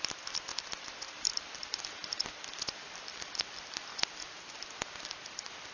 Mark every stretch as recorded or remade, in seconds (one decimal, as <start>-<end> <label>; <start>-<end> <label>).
0.0-3.9 recorded; 3.9-4.5 remade; 4.5-5.7 recorded